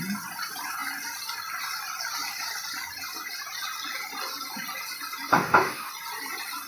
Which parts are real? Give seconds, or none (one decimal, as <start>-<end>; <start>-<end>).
0.0-5.3; 5.9-6.7

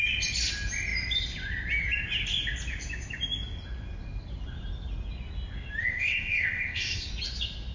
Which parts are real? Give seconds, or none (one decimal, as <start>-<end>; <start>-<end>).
0.0-5.8; 7.1-7.7

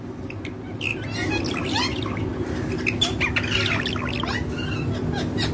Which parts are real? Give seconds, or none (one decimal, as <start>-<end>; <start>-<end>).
0.0-0.9; 1.4-5.5

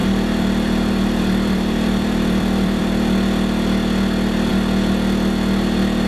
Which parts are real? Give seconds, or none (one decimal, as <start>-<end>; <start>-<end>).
3.0-6.1